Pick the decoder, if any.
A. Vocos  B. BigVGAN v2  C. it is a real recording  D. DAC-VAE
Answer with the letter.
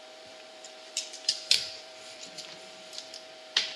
B